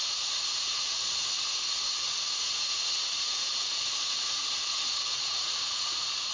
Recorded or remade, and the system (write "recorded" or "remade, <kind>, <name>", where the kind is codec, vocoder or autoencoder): remade, vocoder, Vocos